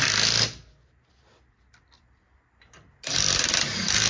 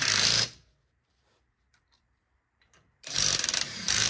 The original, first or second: first